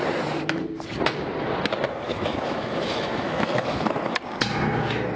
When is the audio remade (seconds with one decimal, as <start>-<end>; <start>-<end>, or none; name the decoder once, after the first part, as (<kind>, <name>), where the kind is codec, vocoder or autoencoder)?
2.1-4.2 (autoencoder, DAC-VAE)